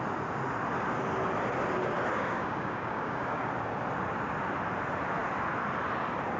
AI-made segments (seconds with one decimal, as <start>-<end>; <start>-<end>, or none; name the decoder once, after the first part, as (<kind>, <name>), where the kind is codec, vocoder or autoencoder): 2.1-3.5 (codec, DAC)